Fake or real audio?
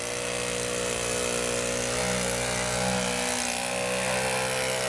real